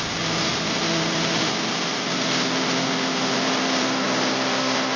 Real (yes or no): yes